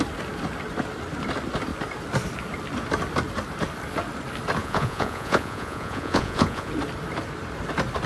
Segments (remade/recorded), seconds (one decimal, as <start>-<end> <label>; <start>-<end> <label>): 0.0-4.6 recorded; 4.6-6.7 remade; 6.7-8.1 recorded